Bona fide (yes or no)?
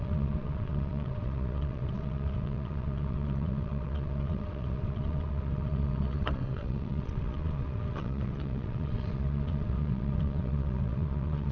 no